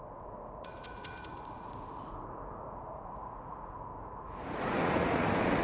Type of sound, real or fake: fake